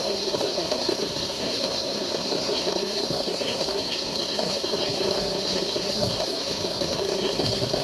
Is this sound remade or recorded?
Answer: remade